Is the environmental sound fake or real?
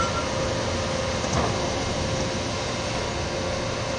real